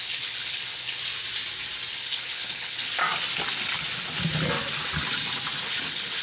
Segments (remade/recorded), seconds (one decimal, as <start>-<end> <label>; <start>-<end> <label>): 0.0-1.0 remade; 1.0-1.9 recorded; 1.9-3.0 remade; 3.0-5.6 recorded; 5.6-6.2 remade